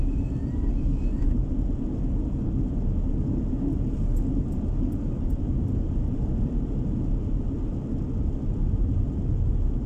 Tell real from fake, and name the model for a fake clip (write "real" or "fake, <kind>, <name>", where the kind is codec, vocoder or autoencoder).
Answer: real